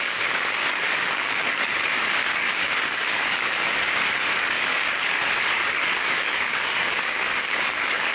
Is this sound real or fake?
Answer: fake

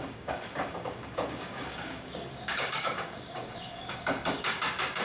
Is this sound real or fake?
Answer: fake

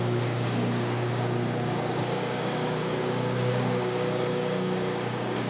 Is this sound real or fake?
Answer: fake